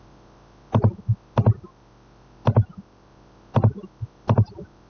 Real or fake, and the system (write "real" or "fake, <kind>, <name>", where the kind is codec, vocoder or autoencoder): real